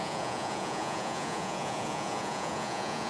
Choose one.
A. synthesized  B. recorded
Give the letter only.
A